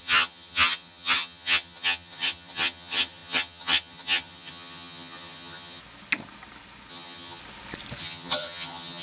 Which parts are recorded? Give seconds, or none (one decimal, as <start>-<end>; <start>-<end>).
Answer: 5.8-6.9; 7.4-8.0